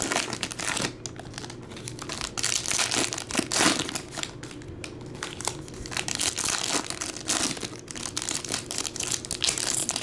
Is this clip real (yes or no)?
yes